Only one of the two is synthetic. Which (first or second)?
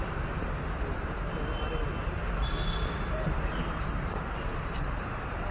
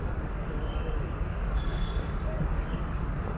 second